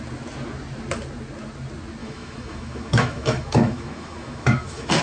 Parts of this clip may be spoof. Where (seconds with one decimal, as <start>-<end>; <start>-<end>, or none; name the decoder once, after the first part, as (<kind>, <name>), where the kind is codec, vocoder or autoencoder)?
2.0-5.0 (autoencoder, DAC-VAE)